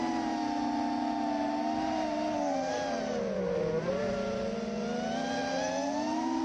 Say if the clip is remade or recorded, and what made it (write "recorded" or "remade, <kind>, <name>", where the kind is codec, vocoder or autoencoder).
recorded